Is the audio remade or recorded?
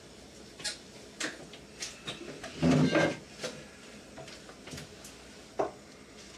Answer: recorded